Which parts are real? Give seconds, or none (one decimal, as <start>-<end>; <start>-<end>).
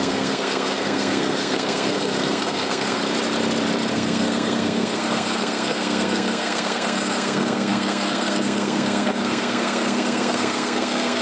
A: 3.0-3.9